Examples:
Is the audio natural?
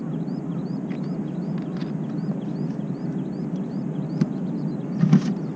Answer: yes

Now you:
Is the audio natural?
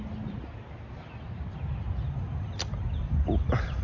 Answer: yes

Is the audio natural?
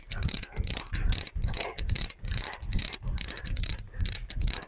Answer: no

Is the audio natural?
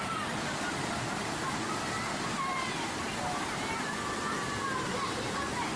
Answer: no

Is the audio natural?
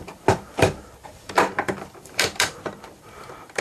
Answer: no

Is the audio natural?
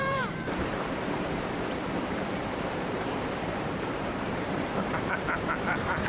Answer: no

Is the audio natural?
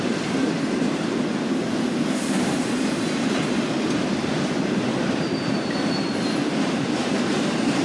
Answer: no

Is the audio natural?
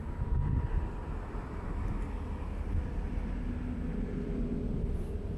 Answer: yes